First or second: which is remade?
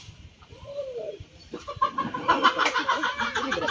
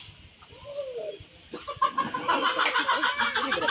first